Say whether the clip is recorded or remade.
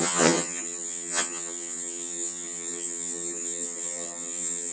remade